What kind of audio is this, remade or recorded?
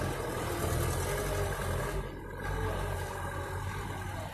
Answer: recorded